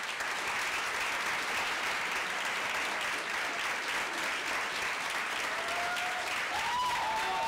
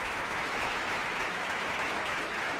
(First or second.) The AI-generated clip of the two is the second